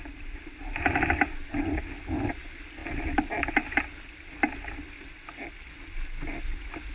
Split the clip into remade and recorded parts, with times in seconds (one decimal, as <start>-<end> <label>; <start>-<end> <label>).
0.0-6.9 recorded